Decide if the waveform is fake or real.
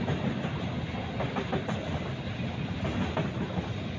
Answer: real